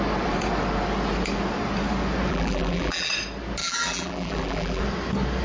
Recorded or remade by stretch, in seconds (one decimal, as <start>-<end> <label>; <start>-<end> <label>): 0.0-2.3 recorded; 2.3-3.1 remade; 3.1-3.6 recorded; 3.6-4.8 remade; 4.8-5.4 recorded